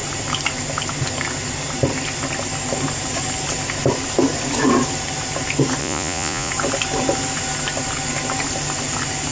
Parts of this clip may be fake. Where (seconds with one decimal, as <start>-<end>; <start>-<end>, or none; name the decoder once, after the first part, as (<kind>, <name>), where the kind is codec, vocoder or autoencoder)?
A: 5.8-6.5 (vocoder, Vocos)